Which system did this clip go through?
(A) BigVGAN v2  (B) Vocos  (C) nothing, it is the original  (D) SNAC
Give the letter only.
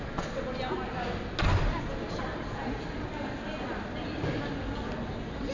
C